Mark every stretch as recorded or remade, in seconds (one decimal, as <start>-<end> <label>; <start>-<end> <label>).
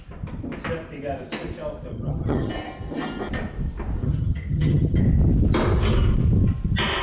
0.0-1.9 recorded; 1.9-2.5 remade; 2.5-4.0 recorded; 4.0-5.0 remade; 5.0-7.0 recorded